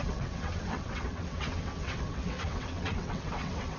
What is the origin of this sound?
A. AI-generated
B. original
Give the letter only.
A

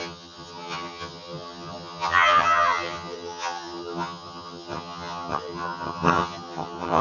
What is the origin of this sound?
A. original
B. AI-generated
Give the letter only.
B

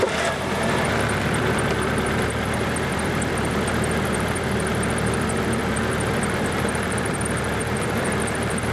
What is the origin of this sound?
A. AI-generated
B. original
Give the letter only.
A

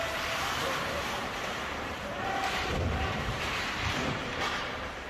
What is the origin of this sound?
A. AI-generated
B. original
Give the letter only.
A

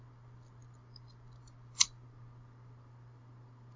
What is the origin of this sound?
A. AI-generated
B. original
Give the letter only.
B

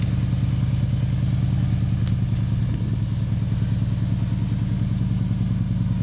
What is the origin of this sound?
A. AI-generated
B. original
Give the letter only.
B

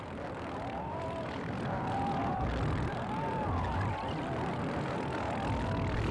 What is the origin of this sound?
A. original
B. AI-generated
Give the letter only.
A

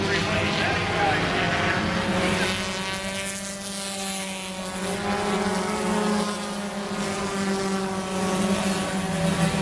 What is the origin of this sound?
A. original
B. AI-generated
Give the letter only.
A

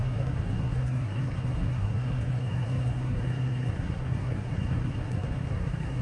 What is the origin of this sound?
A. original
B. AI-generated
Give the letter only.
B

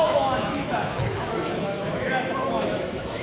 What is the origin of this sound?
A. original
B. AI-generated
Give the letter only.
B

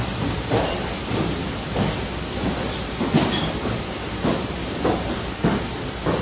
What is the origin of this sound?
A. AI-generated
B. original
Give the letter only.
A